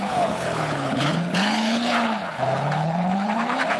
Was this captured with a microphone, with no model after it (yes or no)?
no